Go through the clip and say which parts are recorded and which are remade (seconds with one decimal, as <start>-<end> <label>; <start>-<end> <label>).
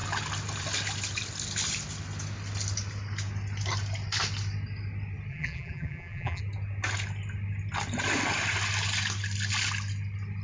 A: 0.0-5.3 recorded; 5.3-6.4 remade; 6.4-10.4 recorded